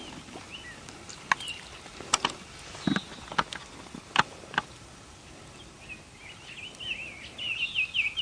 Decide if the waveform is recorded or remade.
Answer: recorded